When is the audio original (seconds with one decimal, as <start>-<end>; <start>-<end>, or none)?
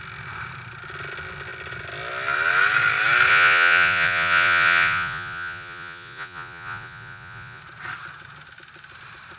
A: 0.0-3.3; 7.6-9.4